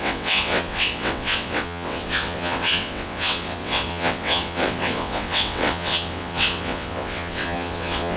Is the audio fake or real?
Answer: fake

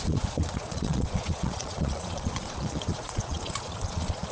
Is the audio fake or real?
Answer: fake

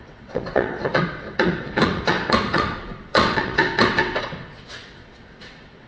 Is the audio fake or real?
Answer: fake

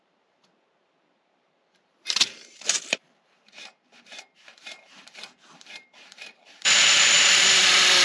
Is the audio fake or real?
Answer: fake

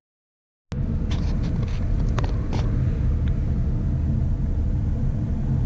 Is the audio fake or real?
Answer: real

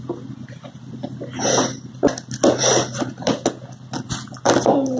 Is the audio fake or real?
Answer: real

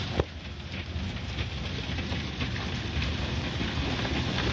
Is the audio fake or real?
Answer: real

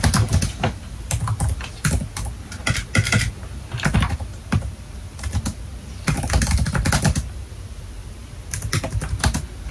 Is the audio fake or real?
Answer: real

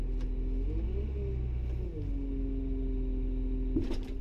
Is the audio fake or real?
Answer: real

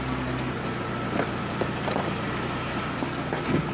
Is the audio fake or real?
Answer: real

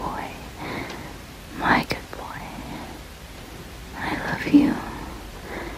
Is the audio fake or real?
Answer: real